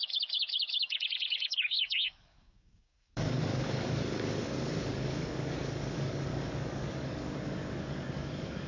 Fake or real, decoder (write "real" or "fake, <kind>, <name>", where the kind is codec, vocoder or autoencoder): fake, codec, DAC